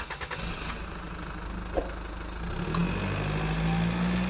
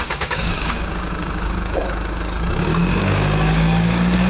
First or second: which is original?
first